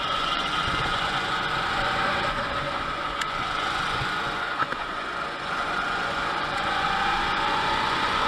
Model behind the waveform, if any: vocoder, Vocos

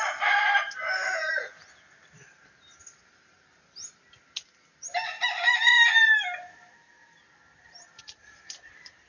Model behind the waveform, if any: none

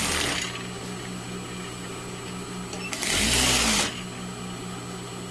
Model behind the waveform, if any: none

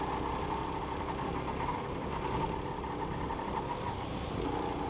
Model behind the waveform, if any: none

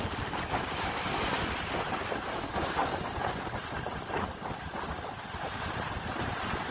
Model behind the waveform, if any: none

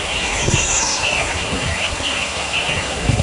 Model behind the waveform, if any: codec, SNAC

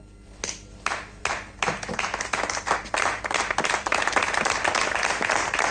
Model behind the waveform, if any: none